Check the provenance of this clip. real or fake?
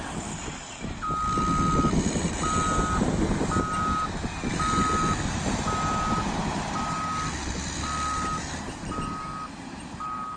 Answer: real